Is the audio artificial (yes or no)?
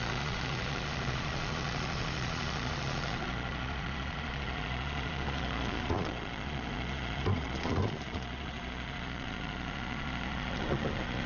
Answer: yes